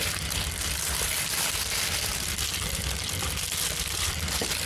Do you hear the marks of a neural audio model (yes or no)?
yes